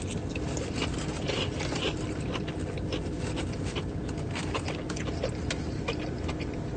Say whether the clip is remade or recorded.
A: recorded